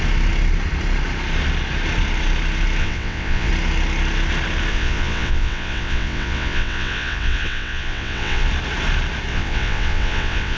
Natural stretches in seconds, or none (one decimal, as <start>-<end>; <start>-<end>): 0.0-2.8; 3.5-4.7; 8.5-9.3